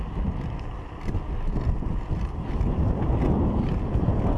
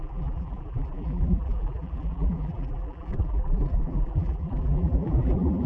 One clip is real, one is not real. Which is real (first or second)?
first